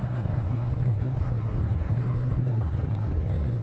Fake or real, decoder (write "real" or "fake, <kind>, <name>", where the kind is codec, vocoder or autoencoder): fake, codec, SNAC